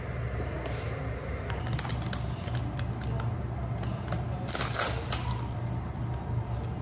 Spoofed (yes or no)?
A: no